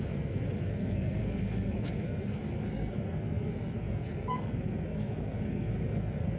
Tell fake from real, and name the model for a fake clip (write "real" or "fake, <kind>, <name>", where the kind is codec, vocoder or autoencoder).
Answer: fake, codec, SNAC